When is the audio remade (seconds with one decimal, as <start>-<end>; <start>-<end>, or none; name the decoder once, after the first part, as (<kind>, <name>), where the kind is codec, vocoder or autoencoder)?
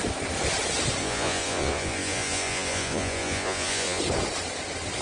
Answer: 1.0-4.0 (vocoder, Vocos)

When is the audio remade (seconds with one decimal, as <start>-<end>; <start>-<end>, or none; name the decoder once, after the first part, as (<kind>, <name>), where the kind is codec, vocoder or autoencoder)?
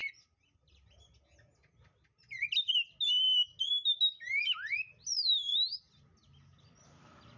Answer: none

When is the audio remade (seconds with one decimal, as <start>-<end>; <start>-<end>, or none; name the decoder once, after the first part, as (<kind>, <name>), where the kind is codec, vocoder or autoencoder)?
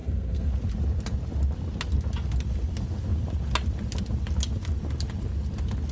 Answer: 0.0-0.5 (codec, SNAC)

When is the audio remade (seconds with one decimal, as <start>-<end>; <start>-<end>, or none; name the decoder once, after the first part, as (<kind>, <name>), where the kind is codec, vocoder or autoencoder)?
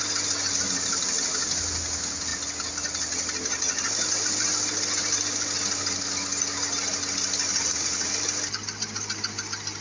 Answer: 7.5-8.1 (vocoder, Vocos)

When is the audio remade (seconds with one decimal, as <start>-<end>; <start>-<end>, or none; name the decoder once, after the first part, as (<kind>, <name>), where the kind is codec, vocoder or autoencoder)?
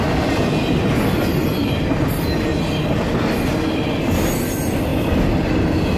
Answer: none